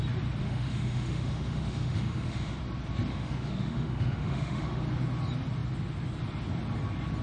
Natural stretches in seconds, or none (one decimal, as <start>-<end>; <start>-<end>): 0.0-0.4; 2.6-3.1; 4.8-7.2

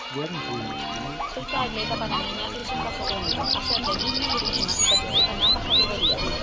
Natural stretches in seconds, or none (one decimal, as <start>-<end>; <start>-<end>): 0.0-6.4

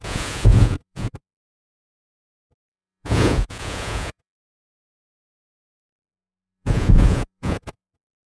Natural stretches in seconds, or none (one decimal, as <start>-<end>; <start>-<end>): none

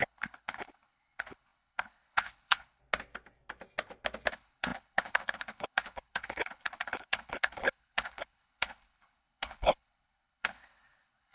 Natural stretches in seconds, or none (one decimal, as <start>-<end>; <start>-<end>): 2.8-4.3

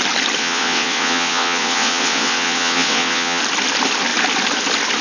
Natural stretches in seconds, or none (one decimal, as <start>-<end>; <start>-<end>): 0.0-0.4; 3.4-5.0